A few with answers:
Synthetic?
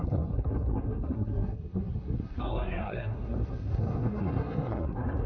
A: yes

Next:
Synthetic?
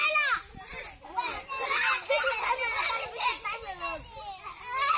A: no